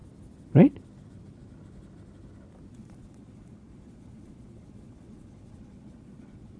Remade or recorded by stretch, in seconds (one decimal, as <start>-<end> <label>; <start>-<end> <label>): 0.0-2.7 recorded; 2.7-6.6 remade